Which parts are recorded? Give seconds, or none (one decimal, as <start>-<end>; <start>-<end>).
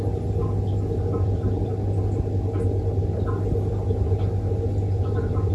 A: 0.0-5.5